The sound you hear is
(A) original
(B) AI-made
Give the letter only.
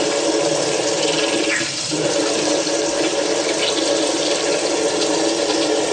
A